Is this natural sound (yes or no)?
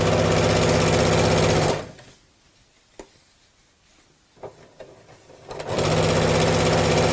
yes